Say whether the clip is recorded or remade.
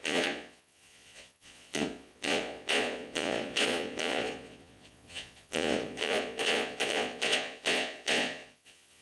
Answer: remade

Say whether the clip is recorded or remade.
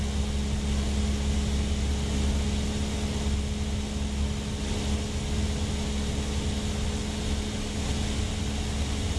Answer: recorded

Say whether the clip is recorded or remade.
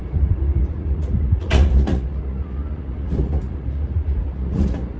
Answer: remade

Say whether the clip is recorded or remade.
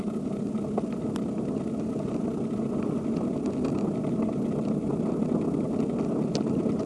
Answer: recorded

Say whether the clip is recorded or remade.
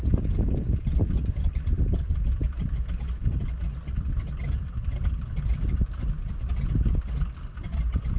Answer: recorded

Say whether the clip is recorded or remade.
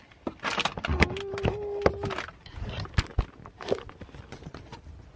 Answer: recorded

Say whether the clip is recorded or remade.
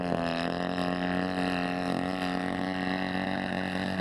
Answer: recorded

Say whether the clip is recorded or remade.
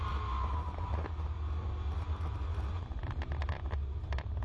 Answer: recorded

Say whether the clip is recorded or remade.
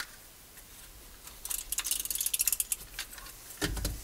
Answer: recorded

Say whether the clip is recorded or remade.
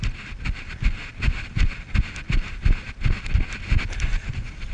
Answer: recorded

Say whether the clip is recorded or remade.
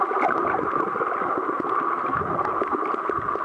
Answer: recorded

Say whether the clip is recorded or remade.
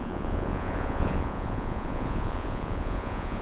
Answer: remade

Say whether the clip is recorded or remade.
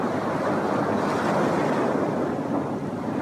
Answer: recorded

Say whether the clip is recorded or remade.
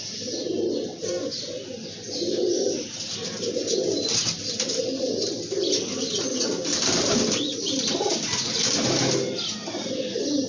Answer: recorded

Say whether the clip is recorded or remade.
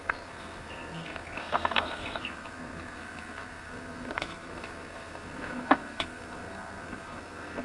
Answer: remade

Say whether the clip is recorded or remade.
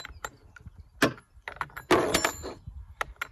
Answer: recorded